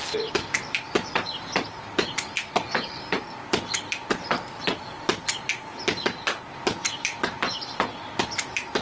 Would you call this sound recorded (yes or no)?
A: yes